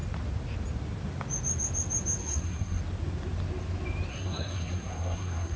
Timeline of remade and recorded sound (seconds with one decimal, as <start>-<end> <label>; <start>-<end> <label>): 0.0-2.2 recorded; 2.2-2.8 remade; 2.8-4.1 recorded; 4.1-5.6 remade